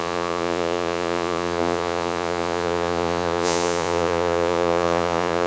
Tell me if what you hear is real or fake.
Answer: fake